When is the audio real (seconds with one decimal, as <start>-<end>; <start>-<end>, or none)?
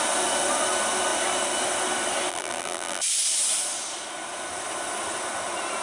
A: 0.0-2.3; 3.0-5.8